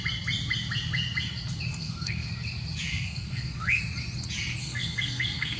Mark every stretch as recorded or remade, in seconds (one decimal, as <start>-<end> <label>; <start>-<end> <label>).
0.0-1.7 recorded; 1.7-2.3 remade; 2.3-2.9 recorded; 2.9-3.8 remade; 3.8-4.6 recorded; 4.6-5.6 remade